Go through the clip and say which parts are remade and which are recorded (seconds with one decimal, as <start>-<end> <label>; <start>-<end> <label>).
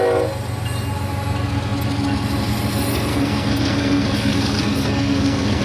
0.0-3.1 recorded; 3.1-5.6 remade